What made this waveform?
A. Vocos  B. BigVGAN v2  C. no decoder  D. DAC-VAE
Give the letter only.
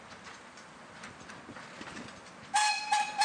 C